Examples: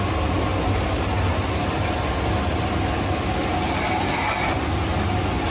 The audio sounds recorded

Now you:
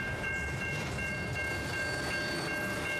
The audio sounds remade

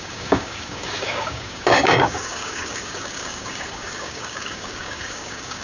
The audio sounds remade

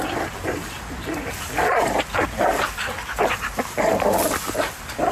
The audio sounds recorded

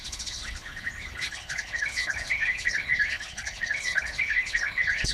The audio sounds remade